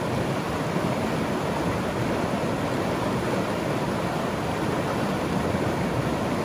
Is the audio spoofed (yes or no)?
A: no